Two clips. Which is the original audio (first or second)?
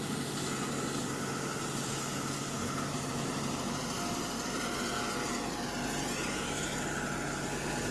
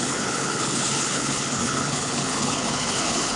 first